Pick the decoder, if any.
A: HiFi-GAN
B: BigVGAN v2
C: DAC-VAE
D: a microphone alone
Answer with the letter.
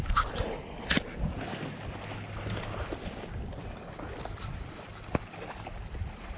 D